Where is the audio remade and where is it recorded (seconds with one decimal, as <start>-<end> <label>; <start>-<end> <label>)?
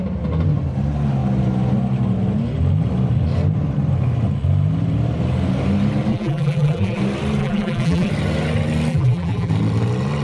0.0-6.1 recorded; 6.1-7.0 remade; 7.0-7.4 recorded; 7.4-8.1 remade; 8.1-8.9 recorded; 8.9-9.5 remade; 9.5-10.2 recorded